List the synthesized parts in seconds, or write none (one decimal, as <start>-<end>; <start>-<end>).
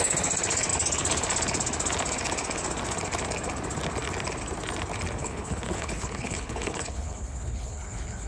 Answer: 5.2-8.3